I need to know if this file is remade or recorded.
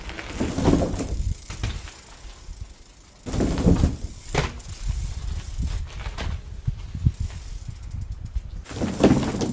recorded